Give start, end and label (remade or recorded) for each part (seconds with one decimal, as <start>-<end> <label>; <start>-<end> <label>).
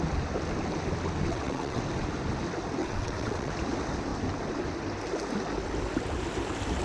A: 0.0-1.3 recorded; 1.3-1.8 remade; 1.8-2.8 recorded; 2.8-3.5 remade; 3.5-6.8 recorded